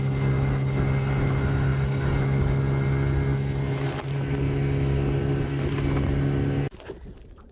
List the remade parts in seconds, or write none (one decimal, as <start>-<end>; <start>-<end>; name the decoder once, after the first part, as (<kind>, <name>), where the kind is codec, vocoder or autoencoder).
none